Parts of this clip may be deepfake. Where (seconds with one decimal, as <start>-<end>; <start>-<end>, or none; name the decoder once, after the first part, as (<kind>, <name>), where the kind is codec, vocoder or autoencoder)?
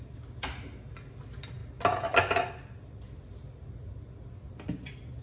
none